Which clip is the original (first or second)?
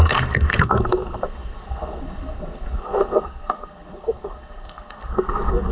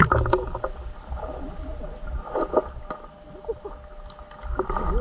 second